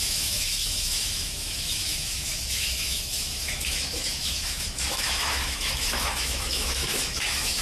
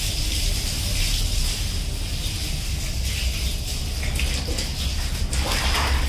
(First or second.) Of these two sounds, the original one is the second